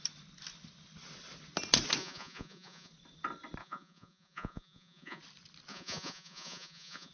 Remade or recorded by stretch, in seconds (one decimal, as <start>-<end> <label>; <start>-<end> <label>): 0.0-2.0 recorded; 2.0-2.9 remade; 2.9-3.6 recorded; 3.6-5.2 remade; 5.2-5.7 recorded; 5.7-7.1 remade